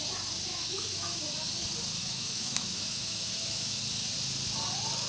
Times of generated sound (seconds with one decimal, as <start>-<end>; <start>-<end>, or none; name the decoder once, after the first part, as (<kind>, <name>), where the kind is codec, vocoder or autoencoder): 0.5-1.2 (autoencoder, DAC-VAE); 2.0-3.8